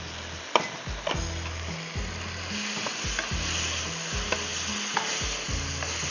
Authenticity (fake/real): real